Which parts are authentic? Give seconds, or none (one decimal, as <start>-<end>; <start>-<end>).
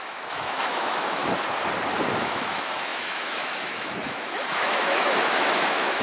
1.2-2.2